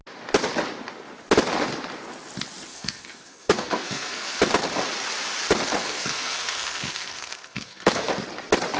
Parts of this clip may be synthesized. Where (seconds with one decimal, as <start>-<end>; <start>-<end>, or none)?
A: 2.7-4.4; 5.8-8.1